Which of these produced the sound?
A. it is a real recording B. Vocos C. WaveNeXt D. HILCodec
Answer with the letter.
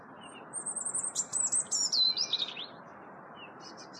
A